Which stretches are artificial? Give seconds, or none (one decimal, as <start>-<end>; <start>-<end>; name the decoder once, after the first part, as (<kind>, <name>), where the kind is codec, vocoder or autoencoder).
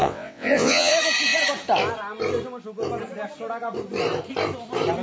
0.0-0.9 (vocoder, WaveNeXt)